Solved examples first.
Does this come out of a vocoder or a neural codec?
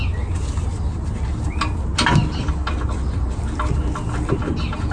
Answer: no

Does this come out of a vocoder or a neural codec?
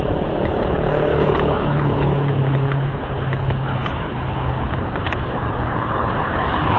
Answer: yes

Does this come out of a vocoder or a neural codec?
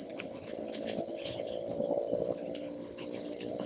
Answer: yes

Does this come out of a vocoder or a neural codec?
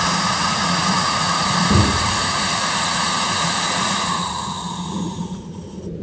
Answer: yes